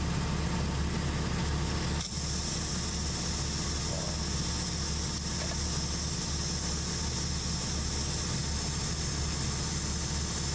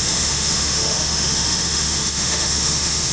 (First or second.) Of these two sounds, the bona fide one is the first